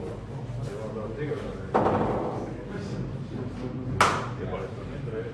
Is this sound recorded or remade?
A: recorded